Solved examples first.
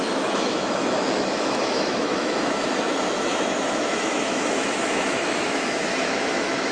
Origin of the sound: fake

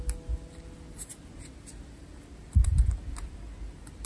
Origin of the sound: real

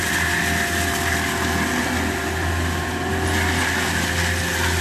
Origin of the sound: real